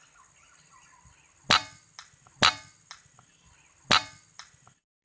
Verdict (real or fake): real